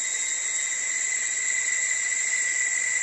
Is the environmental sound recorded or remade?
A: recorded